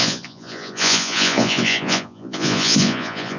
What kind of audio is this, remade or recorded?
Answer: remade